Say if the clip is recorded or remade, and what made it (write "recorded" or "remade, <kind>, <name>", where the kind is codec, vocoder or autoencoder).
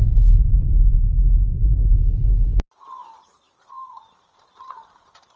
recorded